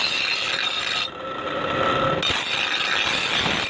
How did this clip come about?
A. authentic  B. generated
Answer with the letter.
A